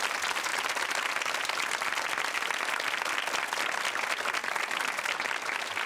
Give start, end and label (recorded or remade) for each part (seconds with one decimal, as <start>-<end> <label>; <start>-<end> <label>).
0.0-5.9 recorded